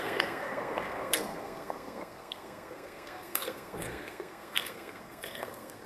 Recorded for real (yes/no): no